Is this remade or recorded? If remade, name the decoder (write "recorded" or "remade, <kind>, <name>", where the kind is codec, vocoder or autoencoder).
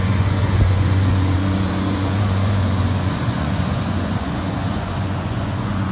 remade, vocoder, Vocos